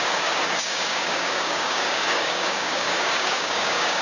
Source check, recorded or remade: remade